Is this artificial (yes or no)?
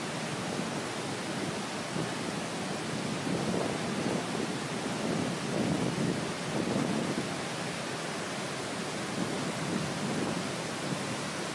no